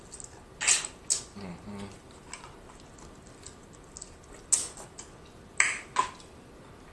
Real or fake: real